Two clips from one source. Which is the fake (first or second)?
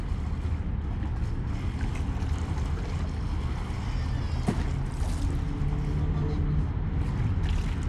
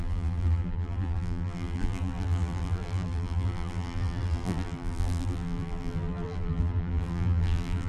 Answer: second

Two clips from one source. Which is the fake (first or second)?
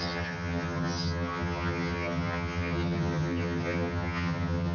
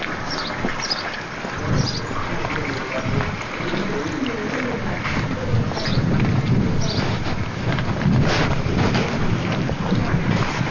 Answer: first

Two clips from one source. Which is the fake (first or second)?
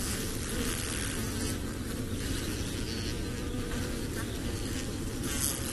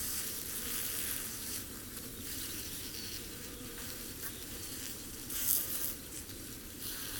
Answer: second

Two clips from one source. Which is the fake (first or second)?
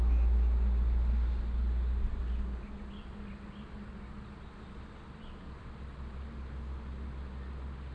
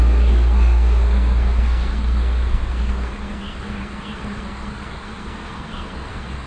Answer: second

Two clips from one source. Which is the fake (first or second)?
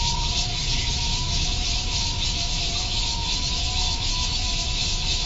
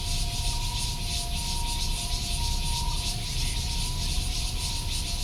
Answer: first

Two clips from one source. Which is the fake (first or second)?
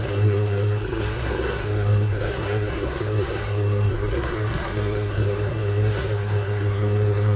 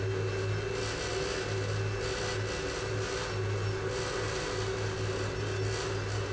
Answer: first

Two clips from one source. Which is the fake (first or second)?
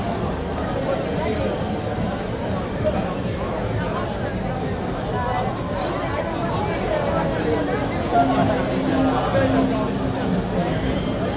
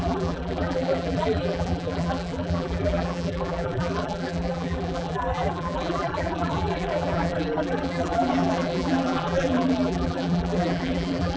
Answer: second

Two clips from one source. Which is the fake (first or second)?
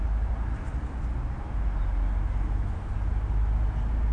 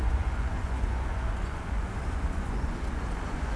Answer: second